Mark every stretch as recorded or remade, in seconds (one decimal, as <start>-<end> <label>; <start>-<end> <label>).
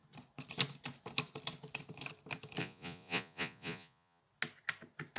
0.0-2.6 recorded; 2.6-4.2 remade; 4.2-5.2 recorded